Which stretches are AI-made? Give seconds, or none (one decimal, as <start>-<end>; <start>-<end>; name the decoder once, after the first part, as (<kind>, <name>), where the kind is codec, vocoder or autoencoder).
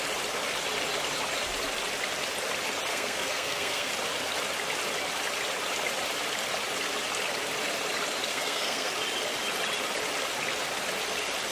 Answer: 2.9-3.9 (codec, SNAC); 8.3-8.9